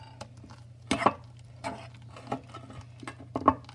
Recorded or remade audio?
recorded